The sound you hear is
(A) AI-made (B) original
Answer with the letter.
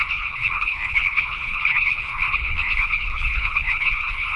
A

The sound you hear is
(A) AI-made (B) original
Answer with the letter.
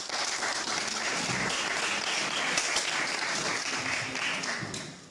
B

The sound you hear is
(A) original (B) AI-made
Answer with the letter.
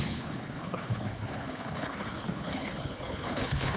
B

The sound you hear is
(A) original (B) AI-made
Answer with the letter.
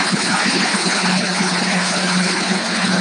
B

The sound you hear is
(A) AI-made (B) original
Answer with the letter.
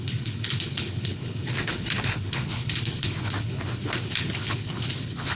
A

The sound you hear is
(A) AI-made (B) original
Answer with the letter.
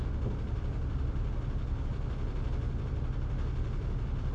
B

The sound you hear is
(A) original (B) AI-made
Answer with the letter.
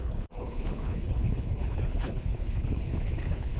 B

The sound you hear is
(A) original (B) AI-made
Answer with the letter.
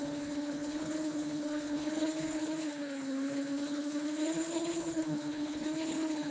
B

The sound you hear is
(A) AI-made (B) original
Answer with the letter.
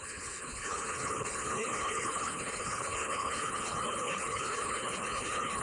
A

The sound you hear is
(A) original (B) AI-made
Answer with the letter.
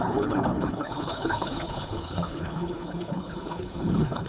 B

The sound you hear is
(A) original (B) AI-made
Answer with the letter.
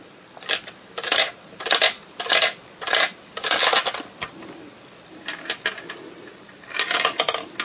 A